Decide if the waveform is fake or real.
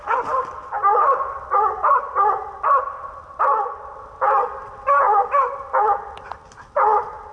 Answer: real